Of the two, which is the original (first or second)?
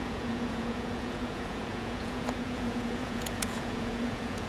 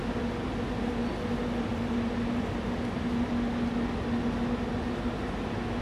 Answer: second